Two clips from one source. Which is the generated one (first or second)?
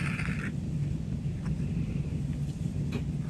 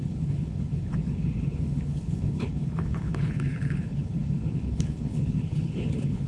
second